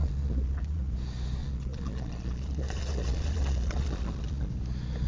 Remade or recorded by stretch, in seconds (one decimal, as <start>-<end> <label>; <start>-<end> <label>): 0.0-0.9 remade; 0.9-1.4 recorded; 1.4-4.5 remade; 4.5-5.1 recorded